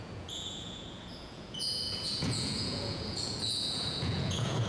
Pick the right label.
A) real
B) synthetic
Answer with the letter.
B